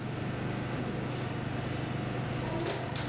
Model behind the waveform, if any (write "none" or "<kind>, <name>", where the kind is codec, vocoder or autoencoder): none